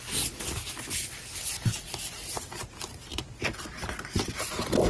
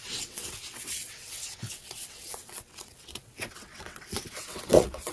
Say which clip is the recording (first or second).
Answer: first